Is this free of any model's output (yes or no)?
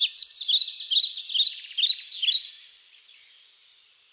yes